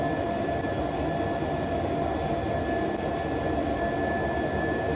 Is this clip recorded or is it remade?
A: recorded